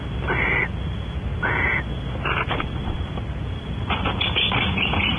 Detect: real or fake real